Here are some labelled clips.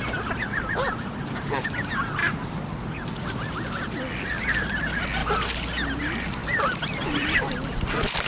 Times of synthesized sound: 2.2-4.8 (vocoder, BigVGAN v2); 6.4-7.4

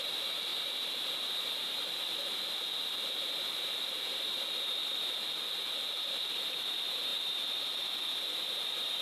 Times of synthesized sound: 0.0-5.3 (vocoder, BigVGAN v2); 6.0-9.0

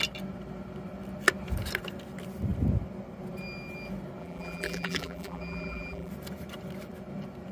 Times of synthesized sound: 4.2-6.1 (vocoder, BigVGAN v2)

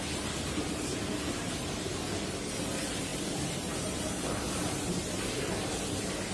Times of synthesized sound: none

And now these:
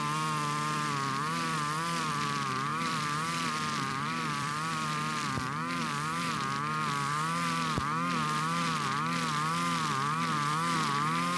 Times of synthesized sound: 2.7-6.3 (vocoder, BigVGAN v2)

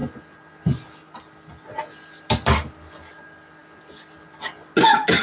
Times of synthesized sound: none

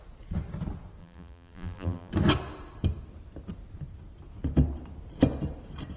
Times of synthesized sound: 1.0-2.1 (vocoder, BigVGAN v2)